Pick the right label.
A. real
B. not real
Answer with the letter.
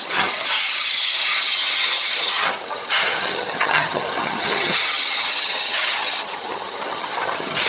B